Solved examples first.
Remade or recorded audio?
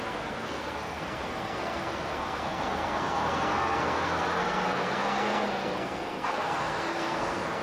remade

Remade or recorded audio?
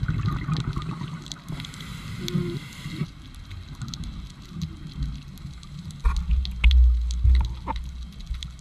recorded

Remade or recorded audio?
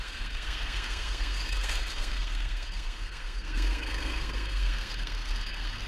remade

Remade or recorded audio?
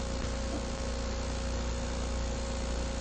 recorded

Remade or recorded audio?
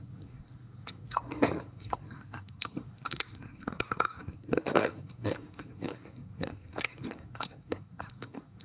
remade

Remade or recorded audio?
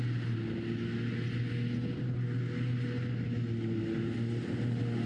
recorded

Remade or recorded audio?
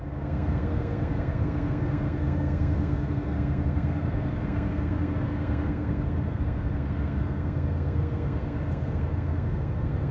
remade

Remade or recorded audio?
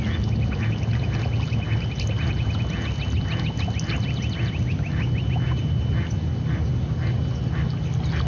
recorded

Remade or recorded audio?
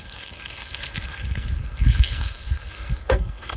remade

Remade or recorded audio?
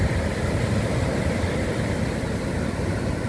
recorded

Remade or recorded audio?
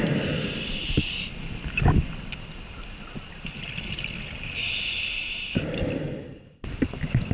recorded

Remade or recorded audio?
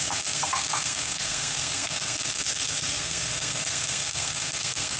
remade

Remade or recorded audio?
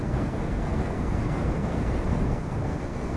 remade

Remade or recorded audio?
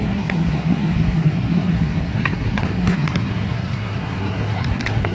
remade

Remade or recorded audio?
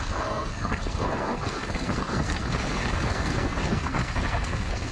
remade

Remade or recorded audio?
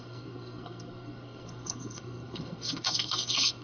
remade